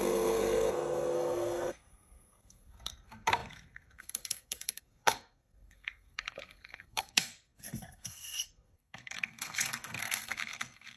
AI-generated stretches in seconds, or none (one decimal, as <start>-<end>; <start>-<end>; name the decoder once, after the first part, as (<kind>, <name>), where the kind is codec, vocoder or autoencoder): 0.0-11.0 (codec, SNAC)